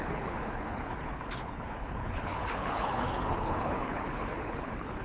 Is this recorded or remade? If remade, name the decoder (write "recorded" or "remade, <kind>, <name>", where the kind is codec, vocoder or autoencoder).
remade, codec, HILCodec